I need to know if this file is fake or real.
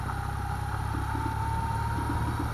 real